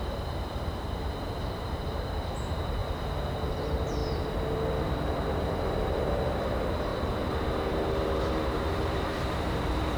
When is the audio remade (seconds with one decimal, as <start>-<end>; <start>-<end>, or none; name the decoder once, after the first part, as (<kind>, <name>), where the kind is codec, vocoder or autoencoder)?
0.0-2.8 (vocoder, BigVGAN v2); 3.5-6.9; 7.6-10.0